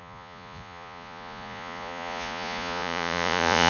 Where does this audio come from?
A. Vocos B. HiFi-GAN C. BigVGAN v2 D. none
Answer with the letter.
A